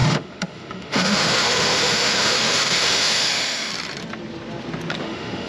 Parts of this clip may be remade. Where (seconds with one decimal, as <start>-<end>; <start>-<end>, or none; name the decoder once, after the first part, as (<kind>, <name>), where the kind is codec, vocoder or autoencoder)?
0.0-3.7 (autoencoder, DAC-VAE); 5.0-5.5